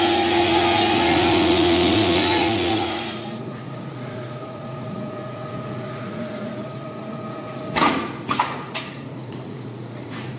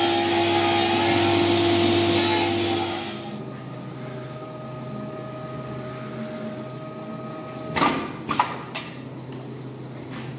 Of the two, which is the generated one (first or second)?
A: first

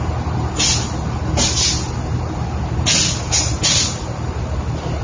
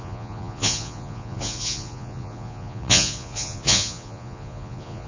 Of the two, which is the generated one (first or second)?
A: second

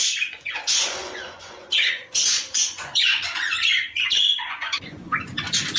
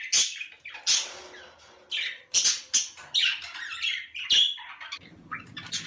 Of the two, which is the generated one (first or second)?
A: first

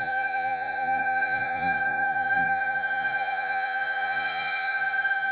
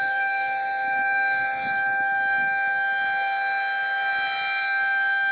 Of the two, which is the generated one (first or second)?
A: first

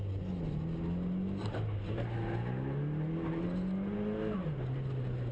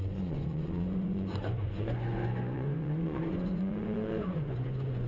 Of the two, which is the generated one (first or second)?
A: second